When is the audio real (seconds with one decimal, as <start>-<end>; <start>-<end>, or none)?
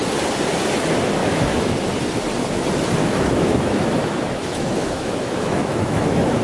0.0-1.2; 1.7-3.0